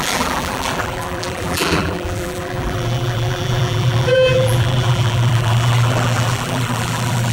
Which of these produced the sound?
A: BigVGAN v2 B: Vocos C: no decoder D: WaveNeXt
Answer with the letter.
A